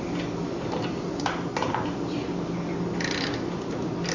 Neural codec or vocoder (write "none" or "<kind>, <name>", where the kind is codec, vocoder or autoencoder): none